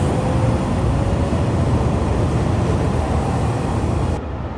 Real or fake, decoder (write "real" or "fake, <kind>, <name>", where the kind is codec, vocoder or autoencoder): real